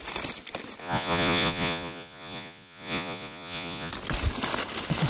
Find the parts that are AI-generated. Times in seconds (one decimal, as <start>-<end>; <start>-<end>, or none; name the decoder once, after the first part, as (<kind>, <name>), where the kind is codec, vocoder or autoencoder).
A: 0.8-3.9 (vocoder, Vocos)